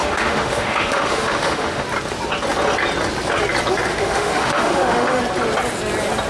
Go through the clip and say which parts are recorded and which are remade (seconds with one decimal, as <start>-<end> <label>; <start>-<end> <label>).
0.0-1.8 remade; 1.8-3.9 recorded; 3.9-5.2 remade; 5.2-6.3 recorded